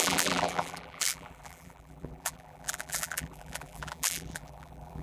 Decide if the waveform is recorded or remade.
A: remade